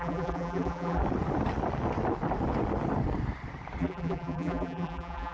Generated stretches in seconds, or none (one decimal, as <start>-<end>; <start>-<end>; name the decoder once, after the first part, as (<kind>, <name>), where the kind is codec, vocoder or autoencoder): 0.0-1.0 (vocoder, BigVGAN v2); 3.8-5.3